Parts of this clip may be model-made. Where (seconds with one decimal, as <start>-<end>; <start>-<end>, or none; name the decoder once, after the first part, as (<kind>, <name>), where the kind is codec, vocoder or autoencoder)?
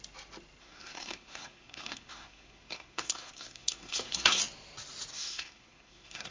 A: 0.6-4.4 (codec, SNAC); 5.1-6.3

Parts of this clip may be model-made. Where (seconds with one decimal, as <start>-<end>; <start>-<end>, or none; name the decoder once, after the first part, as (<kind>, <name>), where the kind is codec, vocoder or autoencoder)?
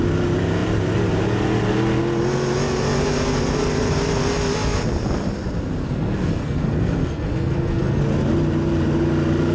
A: 5.8-8.0 (codec, SNAC)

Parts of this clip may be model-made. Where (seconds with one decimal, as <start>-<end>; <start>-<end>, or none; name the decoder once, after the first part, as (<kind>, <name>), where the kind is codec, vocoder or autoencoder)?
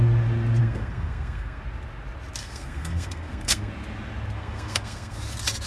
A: 0.6-1.6 (codec, SNAC); 2.4-3.7; 4.4-5.2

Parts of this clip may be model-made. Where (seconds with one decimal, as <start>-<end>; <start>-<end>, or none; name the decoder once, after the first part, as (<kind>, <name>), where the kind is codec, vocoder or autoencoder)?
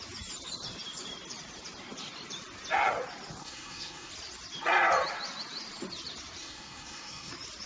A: 3.4-4.1 (codec, SNAC); 6.4-7.3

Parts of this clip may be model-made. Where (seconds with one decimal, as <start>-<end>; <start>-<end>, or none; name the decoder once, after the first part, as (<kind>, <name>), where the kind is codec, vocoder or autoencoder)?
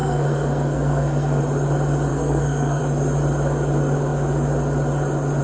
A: 0.0-1.4 (codec, SNAC); 2.1-2.8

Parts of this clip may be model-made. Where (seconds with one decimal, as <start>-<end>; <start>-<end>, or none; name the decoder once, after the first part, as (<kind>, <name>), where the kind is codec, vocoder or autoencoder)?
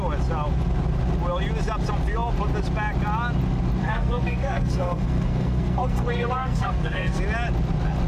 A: 3.8-7.2 (codec, SNAC)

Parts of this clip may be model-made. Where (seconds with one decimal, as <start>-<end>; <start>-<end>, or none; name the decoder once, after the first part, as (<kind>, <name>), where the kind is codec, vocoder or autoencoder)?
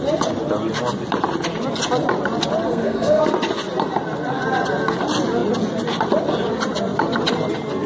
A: 2.7-3.2 (codec, SNAC)